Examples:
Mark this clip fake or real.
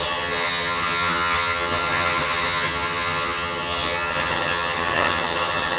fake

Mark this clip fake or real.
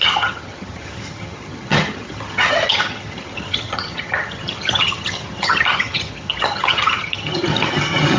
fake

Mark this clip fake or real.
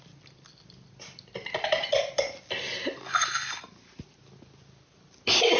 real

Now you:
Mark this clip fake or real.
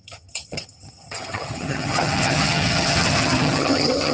fake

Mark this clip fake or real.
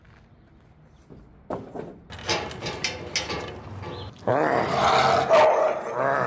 real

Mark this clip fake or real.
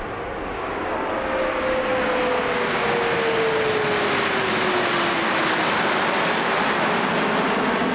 real